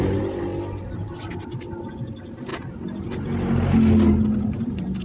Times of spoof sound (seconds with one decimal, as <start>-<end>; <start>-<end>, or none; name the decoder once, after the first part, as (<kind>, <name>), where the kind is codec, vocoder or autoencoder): 0.0-0.5 (vocoder, BigVGAN v2); 1.3-2.5; 4.4-5.0